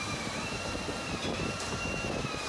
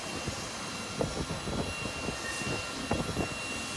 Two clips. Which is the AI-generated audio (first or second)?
first